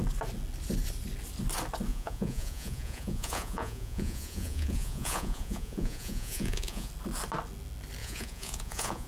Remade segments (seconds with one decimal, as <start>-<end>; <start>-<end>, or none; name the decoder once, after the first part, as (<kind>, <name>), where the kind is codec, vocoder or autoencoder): 1.9-6.9 (vocoder, Vocos); 8.0-9.1